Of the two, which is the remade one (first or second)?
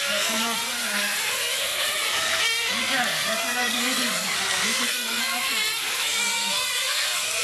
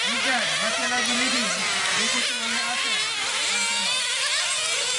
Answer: first